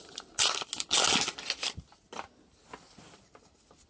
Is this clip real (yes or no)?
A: yes